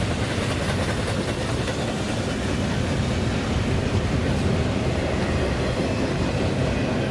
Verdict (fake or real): real